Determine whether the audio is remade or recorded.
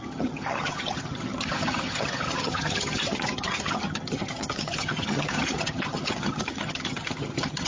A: remade